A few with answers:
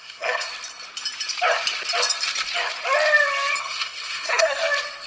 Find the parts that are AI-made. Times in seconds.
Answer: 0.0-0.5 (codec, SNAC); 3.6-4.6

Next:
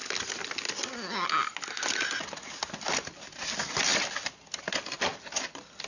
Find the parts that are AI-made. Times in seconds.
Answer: none

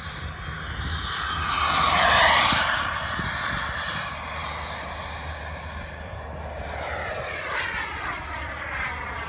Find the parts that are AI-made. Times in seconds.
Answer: none

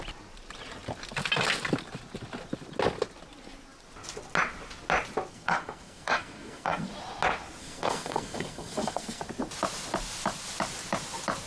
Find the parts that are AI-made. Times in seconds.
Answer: 5.3-6.9 (codec, SNAC); 7.6-9.2